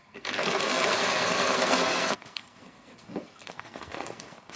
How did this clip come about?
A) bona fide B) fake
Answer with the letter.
B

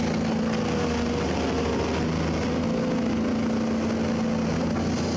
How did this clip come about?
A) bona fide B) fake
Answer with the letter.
A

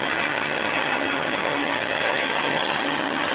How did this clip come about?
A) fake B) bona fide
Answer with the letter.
A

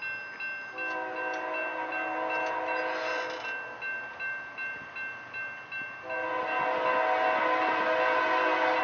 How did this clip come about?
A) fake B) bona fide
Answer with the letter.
B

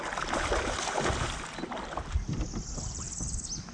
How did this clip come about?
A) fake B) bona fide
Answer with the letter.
B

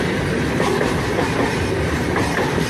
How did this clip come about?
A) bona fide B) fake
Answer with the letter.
B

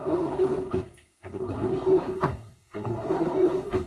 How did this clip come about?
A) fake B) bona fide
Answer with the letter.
A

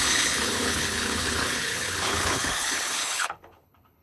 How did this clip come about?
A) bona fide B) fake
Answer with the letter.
B